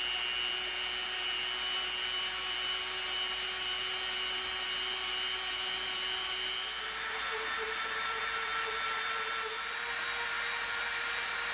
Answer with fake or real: real